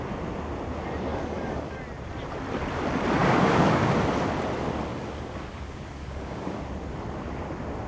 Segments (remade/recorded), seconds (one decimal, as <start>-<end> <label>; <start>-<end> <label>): 0.0-1.1 recorded; 1.1-1.8 remade; 1.8-3.2 recorded; 3.2-3.9 remade; 3.9-4.9 recorded; 4.9-6.6 remade; 6.6-7.9 recorded